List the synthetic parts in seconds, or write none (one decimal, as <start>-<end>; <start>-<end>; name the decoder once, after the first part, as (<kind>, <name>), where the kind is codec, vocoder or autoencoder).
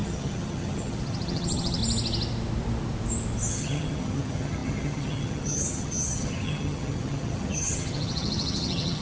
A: 0.0-1.8 (vocoder, HiFi-GAN); 3.5-9.0